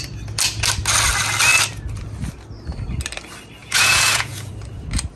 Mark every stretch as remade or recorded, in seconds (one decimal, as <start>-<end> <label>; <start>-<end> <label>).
0.0-3.6 recorded; 3.6-4.5 remade; 4.5-5.2 recorded